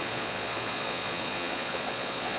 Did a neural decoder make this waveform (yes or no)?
yes